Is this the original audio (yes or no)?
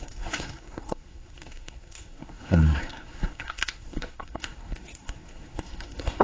no